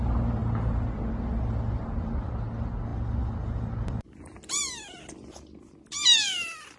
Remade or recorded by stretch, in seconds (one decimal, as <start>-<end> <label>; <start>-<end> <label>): 0.0-6.8 recorded